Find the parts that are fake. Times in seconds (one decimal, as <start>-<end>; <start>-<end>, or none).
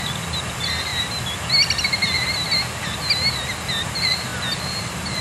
none